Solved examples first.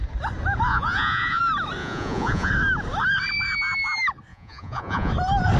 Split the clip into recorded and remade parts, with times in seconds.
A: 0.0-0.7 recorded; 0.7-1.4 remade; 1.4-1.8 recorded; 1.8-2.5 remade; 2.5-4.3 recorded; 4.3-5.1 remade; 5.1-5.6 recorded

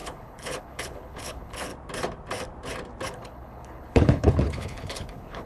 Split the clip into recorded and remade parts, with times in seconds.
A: 0.0-1.7 remade; 1.7-3.1 recorded; 3.1-5.5 remade